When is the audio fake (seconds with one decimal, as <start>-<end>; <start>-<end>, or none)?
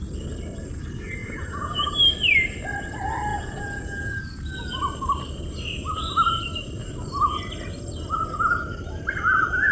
1.2-1.9; 3.3-4.2